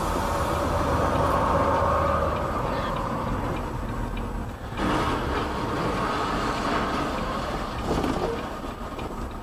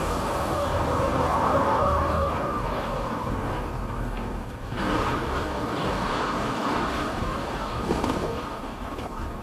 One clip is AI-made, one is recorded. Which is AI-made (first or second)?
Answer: second